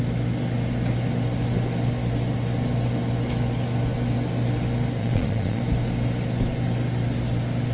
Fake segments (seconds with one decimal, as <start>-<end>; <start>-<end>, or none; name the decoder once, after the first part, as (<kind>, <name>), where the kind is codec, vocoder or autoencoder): 5.0-5.6 (vocoder, Vocos)